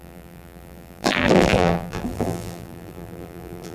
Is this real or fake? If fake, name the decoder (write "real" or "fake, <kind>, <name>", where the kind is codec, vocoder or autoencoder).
fake, vocoder, BigVGAN v2